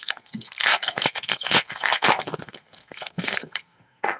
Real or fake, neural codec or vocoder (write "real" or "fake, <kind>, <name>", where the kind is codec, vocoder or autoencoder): fake, codec, SNAC